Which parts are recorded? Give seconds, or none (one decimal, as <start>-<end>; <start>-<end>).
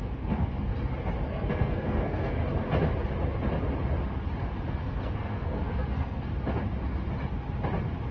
0.7-1.3; 2.4-4.7; 6.3-8.1